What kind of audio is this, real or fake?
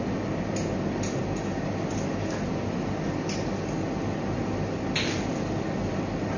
real